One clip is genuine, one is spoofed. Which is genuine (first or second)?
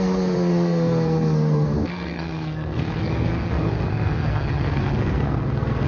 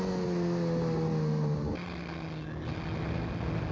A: second